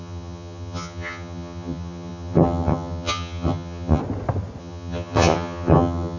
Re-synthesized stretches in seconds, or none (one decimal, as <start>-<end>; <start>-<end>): 0.0-4.0; 4.6-6.2